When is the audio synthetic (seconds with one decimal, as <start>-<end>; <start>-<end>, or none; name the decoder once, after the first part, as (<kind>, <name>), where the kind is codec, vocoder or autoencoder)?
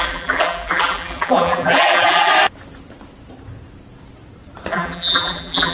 0.0-2.3 (vocoder, BigVGAN v2); 4.7-5.7